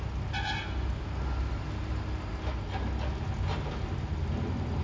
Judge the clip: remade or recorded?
recorded